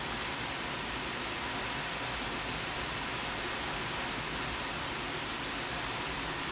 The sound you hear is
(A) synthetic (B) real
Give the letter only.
B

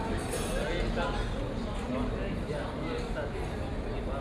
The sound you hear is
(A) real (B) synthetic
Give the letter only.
A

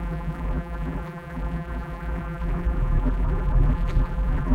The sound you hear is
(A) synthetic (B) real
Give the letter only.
A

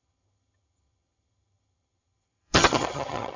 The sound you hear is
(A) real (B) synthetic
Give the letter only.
B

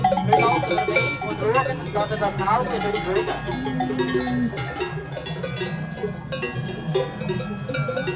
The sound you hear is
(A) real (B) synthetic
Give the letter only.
A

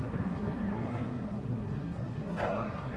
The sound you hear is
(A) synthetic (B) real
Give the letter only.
A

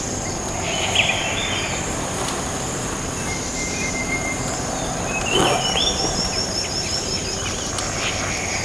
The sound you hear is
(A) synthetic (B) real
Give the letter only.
A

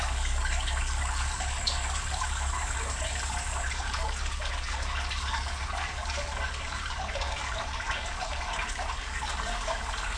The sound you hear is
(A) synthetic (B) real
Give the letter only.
A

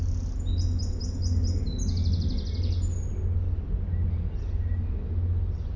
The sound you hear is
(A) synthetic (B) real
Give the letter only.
B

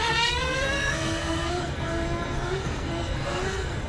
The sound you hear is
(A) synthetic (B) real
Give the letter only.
A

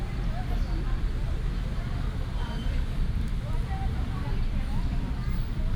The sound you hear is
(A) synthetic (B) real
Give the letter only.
A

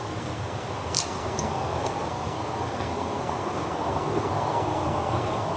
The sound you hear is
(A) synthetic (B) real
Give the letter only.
A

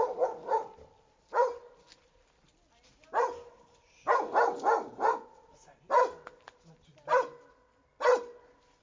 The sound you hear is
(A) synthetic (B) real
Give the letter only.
B